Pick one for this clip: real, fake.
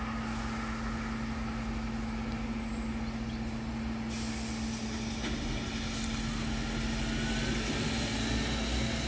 real